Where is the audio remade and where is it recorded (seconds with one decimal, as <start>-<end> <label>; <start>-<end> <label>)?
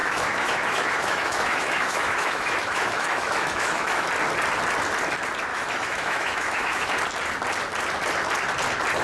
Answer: 0.0-4.1 remade; 4.1-5.5 recorded; 5.5-6.9 remade; 6.9-9.0 recorded